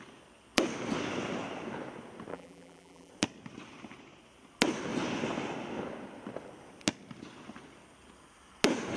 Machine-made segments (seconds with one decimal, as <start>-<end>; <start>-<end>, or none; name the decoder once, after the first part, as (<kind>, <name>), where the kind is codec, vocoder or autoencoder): 2.3-3.1 (vocoder, BigVGAN v2)